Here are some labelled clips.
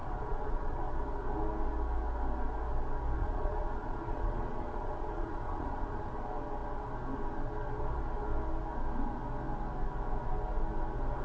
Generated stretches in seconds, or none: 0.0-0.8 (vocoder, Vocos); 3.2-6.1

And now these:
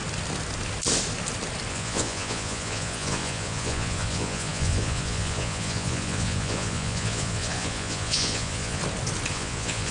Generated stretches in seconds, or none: 1.7-8.8 (vocoder, Vocos); 9.3-9.9

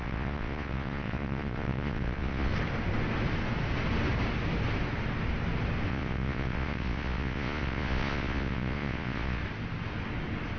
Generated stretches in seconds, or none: 0.0-2.5 (vocoder, Vocos); 5.9-9.4